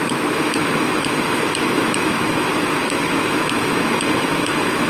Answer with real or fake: fake